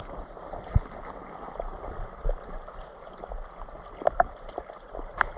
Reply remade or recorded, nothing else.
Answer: recorded